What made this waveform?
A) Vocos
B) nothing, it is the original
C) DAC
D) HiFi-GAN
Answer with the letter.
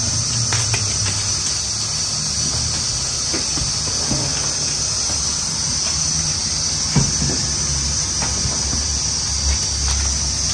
B